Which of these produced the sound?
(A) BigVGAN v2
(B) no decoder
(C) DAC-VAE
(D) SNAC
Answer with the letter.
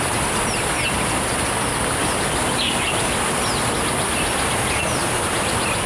B